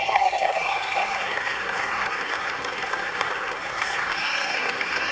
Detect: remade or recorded remade